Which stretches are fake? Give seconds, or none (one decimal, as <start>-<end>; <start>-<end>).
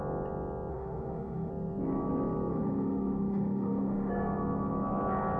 0.7-1.5; 2.5-4.1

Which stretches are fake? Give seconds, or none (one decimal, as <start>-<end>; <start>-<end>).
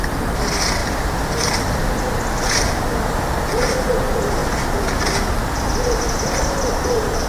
none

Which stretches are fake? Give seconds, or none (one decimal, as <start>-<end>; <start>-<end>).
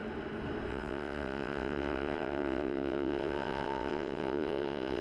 0.7-5.0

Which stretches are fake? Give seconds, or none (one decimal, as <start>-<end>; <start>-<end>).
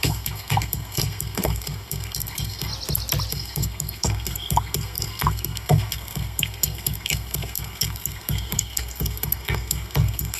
0.0-2.7; 3.3-10.4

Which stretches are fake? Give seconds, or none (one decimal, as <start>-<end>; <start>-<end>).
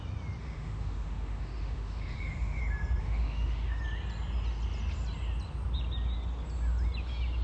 0.4-2.6; 3.0-3.8